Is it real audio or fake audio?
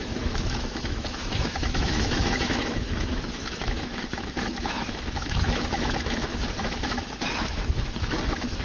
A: fake